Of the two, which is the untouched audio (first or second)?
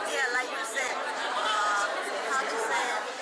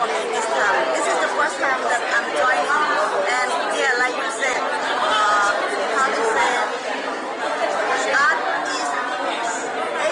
second